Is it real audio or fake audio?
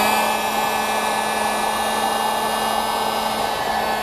real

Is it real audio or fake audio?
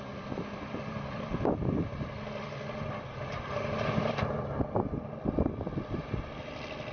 fake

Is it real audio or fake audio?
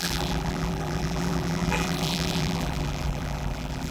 fake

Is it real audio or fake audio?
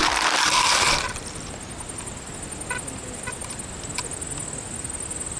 real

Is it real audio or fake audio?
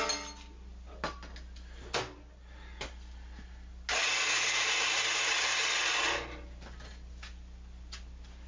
real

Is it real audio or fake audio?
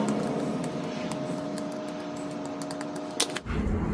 real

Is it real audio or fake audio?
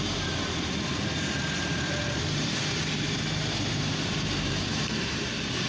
fake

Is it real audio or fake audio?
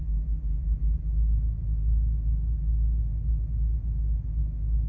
real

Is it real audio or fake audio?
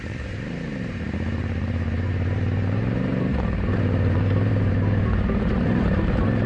fake